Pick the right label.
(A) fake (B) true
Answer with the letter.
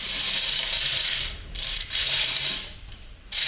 A